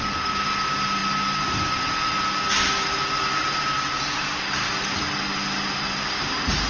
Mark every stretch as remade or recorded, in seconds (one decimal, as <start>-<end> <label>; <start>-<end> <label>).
0.0-6.7 recorded